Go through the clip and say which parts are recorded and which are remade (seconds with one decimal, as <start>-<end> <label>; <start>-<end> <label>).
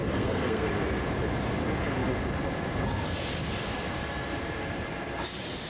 0.0-0.7 remade; 0.7-5.7 recorded